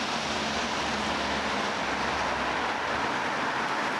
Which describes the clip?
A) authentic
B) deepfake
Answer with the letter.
A